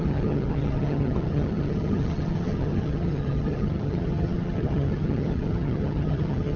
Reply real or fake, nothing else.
fake